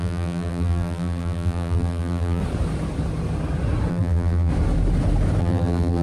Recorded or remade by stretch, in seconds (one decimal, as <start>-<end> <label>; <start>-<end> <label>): 0.0-2.4 remade; 2.4-3.9 recorded; 3.9-4.5 remade; 4.5-5.4 recorded; 5.4-6.0 remade